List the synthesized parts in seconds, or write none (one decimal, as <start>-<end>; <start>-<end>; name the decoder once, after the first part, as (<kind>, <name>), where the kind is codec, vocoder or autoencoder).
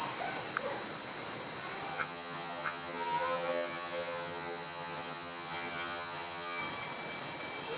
1.9-6.6 (vocoder, HiFi-GAN)